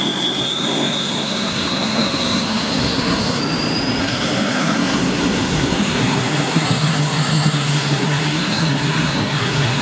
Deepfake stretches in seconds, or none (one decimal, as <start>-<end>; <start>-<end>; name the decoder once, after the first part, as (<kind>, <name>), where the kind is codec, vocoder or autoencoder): 0.0-3.4 (codec, SNAC); 4.0-9.8